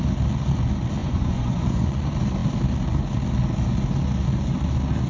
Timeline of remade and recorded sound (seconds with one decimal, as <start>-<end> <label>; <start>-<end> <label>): 0.0-1.0 recorded; 1.0-2.0 remade; 2.0-5.1 recorded

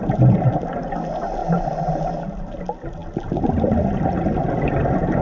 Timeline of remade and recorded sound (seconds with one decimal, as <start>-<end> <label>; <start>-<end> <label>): 0.0-5.2 recorded